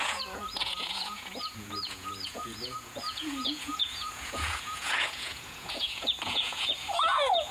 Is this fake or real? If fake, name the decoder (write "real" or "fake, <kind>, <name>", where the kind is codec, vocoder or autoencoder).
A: fake, vocoder, Vocos